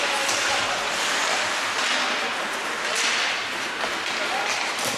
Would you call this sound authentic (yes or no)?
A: yes